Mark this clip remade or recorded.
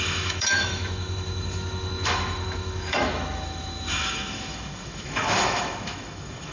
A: remade